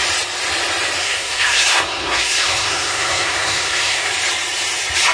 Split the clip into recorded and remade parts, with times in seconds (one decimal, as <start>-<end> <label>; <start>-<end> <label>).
0.0-1.0 recorded; 1.0-4.1 remade; 4.1-5.1 recorded